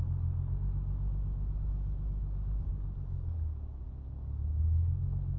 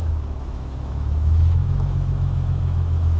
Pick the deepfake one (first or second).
second